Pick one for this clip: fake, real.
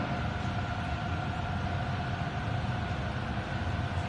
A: real